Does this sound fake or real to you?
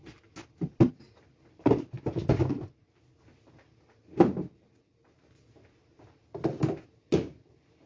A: real